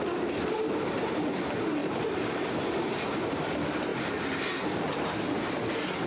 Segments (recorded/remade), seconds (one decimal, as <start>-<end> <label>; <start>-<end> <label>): 0.0-1.8 recorded; 1.8-3.0 remade; 3.0-3.9 recorded; 3.9-5.5 remade; 5.5-6.1 recorded